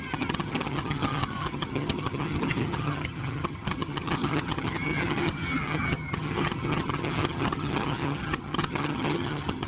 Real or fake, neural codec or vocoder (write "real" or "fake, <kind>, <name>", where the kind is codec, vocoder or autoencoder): fake, vocoder, HiFi-GAN